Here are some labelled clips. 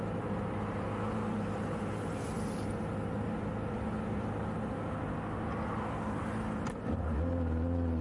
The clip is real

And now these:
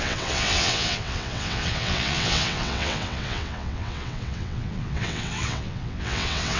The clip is fake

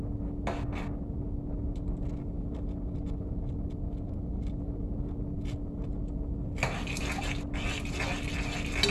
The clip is real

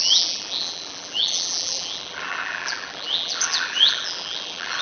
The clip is fake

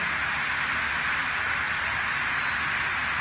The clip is real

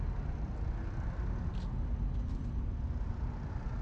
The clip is real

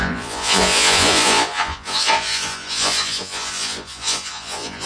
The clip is fake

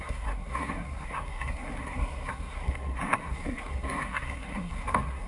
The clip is fake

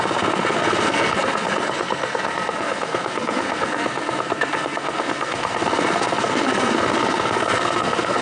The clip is fake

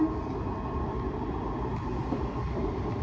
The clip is real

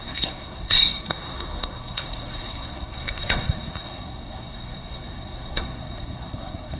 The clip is fake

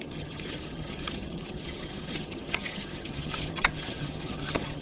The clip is fake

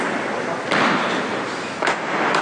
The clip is real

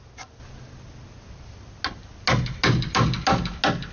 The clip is real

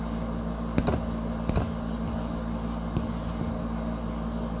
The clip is real